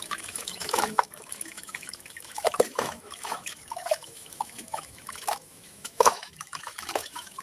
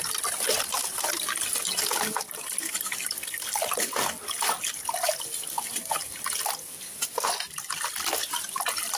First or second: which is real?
second